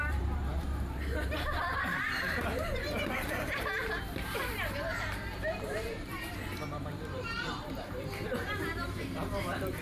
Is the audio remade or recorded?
remade